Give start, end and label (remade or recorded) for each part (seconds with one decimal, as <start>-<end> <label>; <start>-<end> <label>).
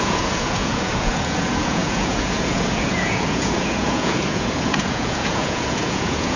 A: 0.0-6.4 remade